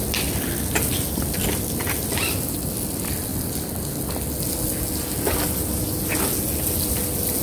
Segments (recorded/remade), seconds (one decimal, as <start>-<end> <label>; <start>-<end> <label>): 0.0-7.4 recorded